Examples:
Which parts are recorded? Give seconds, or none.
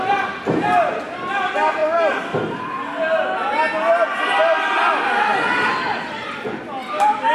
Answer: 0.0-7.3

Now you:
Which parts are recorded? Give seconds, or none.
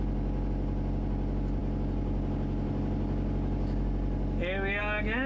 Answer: 0.0-5.3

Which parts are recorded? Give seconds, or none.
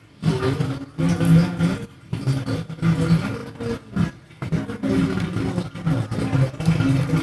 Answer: 0.0-7.2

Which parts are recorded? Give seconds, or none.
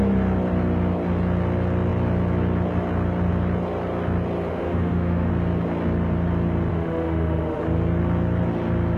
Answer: 0.0-4.5; 5.3-6.7; 7.6-9.0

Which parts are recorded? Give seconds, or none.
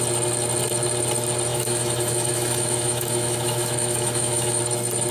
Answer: 0.0-1.5; 4.6-5.1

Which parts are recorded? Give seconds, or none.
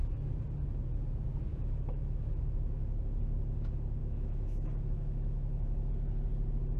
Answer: 0.0-1.5; 2.4-4.0; 5.9-6.8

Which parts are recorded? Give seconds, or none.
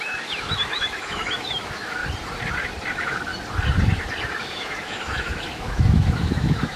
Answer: 2.0-2.9; 3.3-4.4